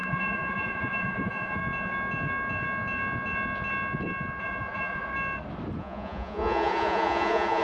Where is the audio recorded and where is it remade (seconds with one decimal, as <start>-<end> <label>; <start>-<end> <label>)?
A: 0.0-1.6 remade; 1.6-4.4 recorded; 4.4-5.1 remade; 5.1-5.8 recorded; 5.8-7.6 remade